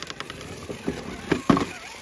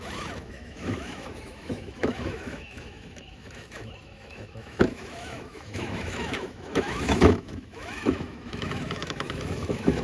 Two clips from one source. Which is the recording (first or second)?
first